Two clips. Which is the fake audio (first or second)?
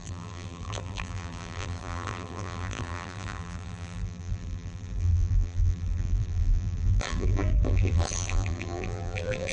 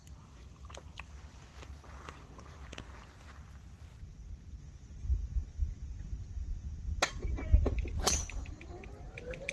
first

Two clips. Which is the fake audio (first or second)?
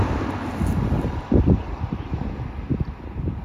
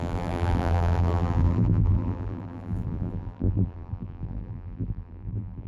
second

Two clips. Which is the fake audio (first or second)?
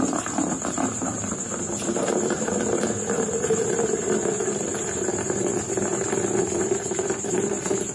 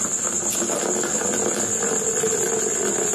first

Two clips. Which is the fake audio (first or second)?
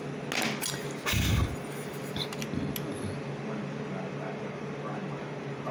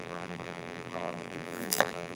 second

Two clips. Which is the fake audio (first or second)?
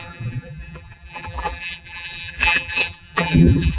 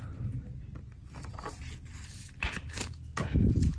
first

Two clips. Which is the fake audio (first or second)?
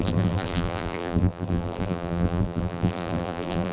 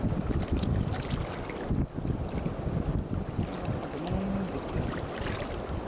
first